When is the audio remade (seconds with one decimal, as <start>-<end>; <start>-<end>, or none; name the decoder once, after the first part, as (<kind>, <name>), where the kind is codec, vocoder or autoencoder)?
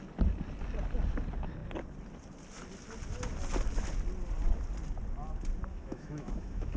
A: 5.7-6.8 (autoencoder, DAC-VAE)